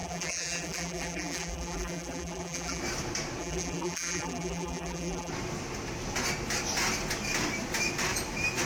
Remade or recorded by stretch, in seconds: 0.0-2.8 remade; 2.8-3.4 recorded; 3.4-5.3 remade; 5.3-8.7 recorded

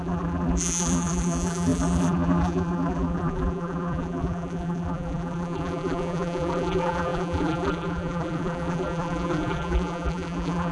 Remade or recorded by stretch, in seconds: 0.0-10.7 remade

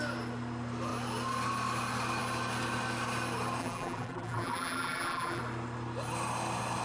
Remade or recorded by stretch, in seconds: 0.0-3.6 recorded; 3.6-5.4 remade; 5.4-6.8 recorded

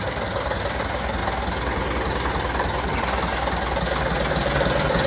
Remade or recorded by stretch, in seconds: 0.0-5.1 recorded

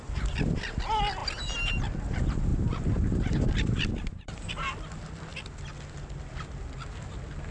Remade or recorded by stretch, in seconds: 0.0-2.5 recorded; 2.5-4.5 remade; 4.5-7.5 recorded

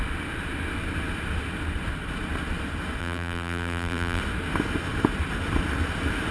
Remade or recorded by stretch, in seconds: 0.0-3.0 recorded; 3.0-4.2 remade; 4.2-6.3 recorded

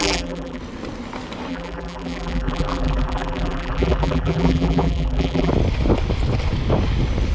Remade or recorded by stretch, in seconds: 0.0-0.6 remade; 0.6-1.5 recorded; 1.5-5.5 remade; 5.5-7.3 recorded